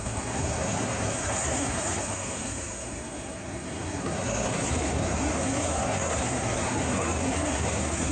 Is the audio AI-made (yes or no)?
yes